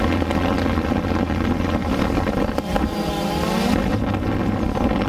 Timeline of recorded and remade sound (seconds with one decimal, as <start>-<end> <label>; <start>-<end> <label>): 0.0-5.1 recorded